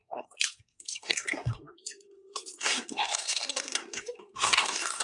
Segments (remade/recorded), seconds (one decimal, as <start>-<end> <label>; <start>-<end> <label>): 0.0-5.0 remade